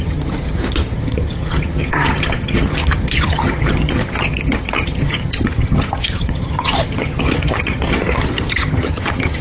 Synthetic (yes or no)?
yes